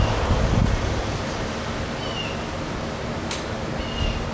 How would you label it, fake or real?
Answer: real